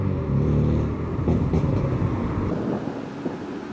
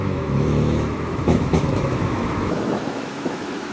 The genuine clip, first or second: first